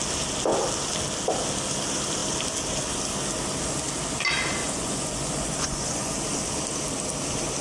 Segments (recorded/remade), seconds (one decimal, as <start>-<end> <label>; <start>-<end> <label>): 0.0-4.6 recorded; 4.6-6.1 remade; 6.1-7.6 recorded